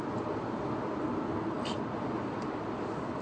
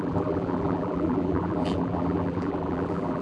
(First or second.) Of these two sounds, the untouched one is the first